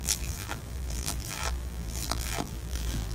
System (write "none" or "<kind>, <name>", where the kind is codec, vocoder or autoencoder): vocoder, BigVGAN v2